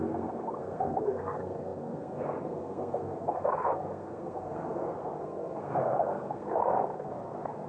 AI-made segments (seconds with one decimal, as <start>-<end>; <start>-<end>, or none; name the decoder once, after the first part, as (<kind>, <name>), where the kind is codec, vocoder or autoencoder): 0.0-7.7 (codec, SNAC)